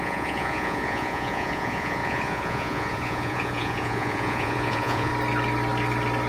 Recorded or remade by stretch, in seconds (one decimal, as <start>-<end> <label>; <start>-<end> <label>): 0.0-5.1 remade; 5.1-6.3 recorded